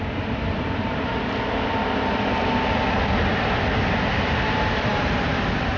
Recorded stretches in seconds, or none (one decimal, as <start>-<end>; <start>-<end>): 0.0-5.8